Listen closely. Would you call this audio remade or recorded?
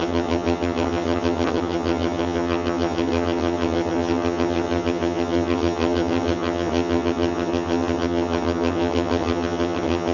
remade